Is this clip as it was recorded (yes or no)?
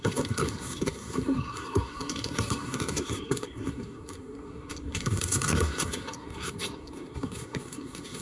no